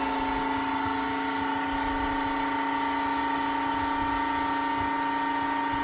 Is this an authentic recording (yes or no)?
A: yes